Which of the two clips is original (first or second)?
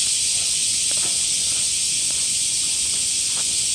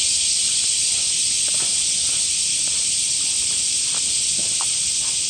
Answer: second